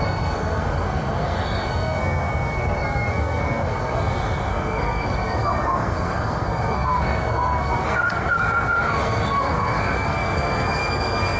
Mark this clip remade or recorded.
remade